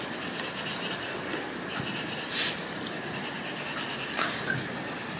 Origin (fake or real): real